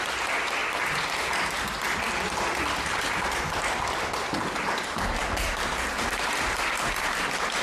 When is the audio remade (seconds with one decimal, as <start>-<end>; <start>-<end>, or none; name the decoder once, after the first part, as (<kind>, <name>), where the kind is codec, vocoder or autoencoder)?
none